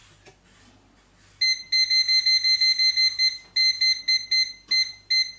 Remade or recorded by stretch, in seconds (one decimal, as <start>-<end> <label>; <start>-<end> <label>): 0.0-5.4 recorded